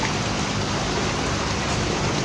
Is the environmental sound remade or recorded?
recorded